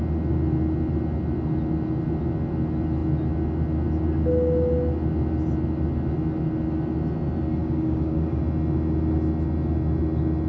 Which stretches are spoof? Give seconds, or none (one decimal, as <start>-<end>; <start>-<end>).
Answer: 7.6-8.4